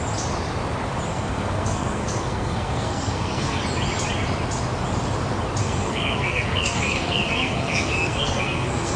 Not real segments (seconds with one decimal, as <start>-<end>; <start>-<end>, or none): 1.1-3.6; 5.6-9.0